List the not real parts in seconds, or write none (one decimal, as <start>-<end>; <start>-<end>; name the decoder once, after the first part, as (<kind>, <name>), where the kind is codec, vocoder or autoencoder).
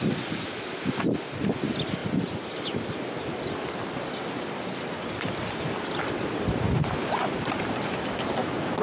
none